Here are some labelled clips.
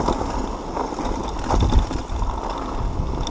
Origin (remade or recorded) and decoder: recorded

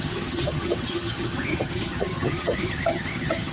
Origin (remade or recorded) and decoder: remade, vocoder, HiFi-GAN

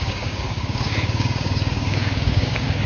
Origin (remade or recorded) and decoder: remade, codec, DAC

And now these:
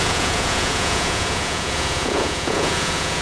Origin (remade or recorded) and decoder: remade, vocoder, Vocos